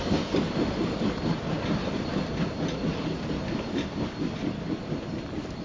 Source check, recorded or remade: recorded